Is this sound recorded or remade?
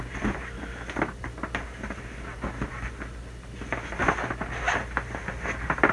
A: recorded